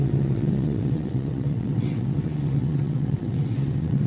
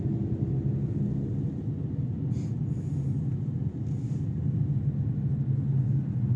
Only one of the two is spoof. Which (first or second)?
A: first